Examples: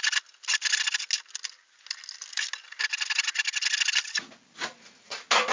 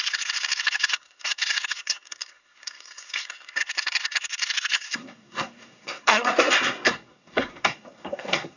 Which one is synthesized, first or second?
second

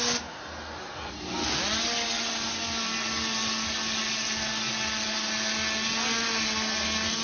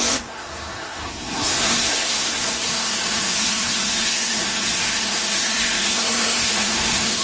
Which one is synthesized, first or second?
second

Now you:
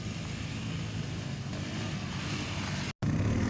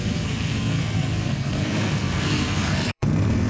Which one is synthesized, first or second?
second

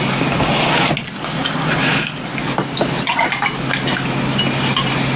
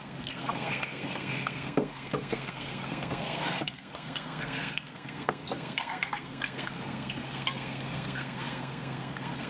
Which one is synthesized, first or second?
second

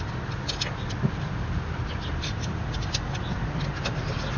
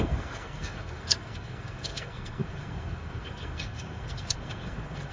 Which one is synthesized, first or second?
second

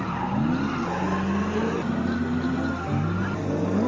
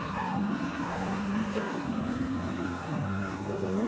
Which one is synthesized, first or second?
second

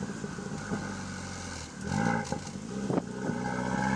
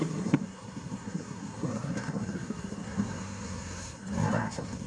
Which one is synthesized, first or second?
second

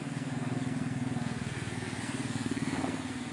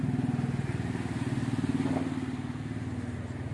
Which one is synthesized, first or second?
first